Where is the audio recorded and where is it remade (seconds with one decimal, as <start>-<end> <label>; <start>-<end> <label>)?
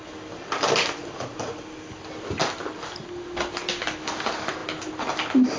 0.0-5.6 recorded